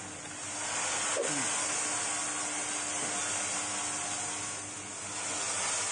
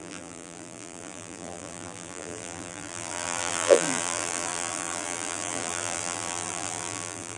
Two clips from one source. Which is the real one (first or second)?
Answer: first